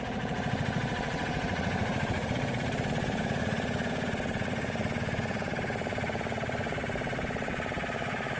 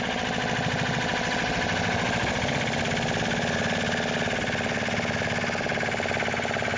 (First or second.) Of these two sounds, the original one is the second